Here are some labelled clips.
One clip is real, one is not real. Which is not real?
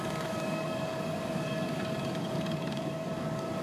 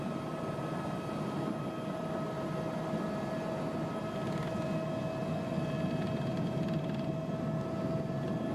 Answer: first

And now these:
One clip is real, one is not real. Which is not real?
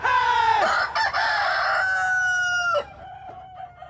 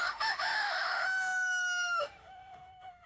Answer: second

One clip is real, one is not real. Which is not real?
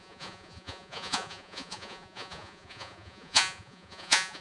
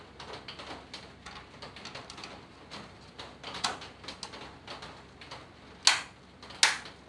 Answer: first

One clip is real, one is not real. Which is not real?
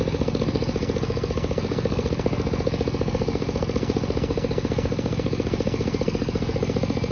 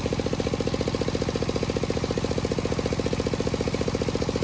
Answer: first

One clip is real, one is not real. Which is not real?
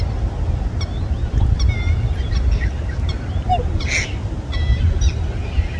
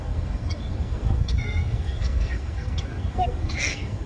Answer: second